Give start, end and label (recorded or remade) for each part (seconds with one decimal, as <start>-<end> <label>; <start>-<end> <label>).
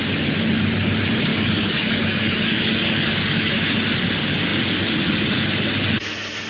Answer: 0.0-1.3 recorded; 1.3-3.5 remade; 3.5-6.5 recorded